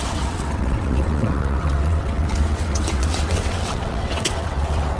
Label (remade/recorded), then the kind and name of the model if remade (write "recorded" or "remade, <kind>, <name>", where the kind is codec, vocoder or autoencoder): remade, vocoder, WaveNeXt